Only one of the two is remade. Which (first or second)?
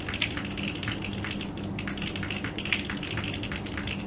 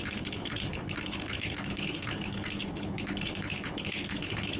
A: second